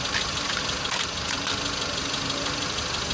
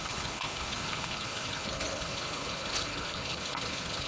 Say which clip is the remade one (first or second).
second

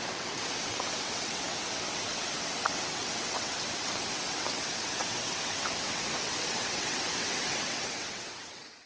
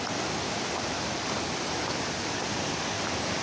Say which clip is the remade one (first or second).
first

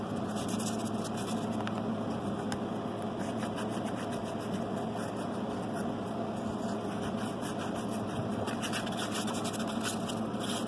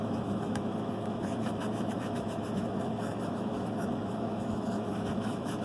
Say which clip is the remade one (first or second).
second